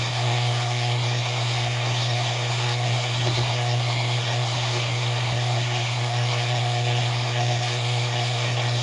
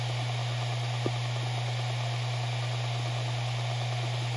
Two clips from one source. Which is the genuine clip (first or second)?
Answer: second